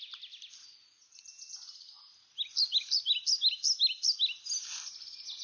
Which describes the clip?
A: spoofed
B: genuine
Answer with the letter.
B